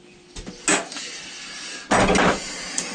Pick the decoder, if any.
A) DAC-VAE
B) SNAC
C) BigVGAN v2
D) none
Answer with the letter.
D